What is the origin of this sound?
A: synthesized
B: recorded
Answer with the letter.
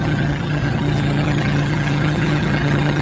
A